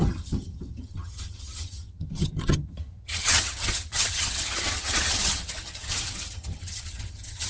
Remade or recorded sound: remade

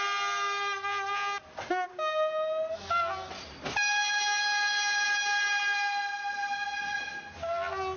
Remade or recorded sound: recorded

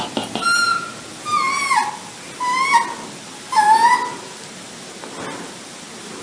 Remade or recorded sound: recorded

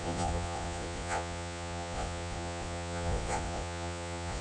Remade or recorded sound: remade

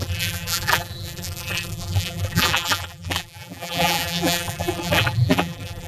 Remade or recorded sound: remade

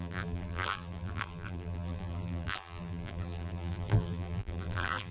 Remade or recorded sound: remade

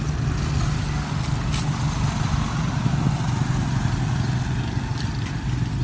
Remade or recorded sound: recorded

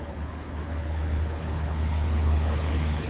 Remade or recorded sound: remade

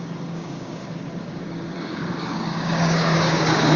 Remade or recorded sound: remade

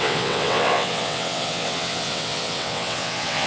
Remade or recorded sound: remade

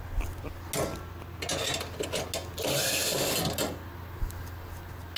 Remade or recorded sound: recorded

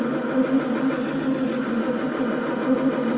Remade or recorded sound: recorded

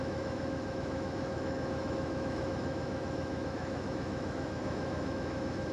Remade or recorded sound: remade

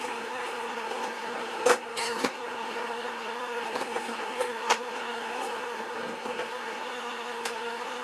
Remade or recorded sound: remade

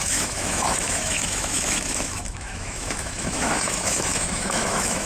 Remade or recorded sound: remade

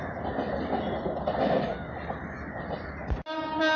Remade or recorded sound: recorded